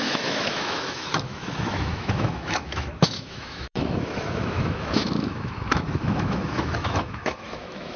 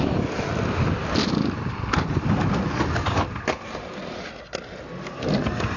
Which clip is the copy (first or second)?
first